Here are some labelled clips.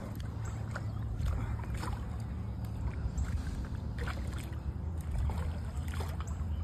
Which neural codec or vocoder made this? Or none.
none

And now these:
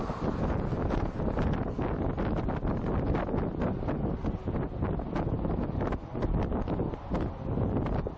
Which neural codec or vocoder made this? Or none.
none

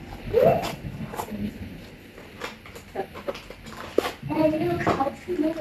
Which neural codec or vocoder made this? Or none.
none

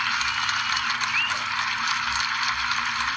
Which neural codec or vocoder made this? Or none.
none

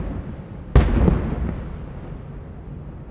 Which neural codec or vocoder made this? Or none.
none